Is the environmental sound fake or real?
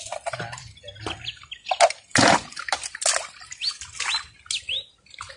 real